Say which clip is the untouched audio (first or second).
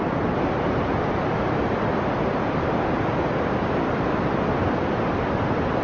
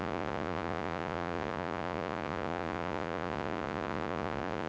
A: first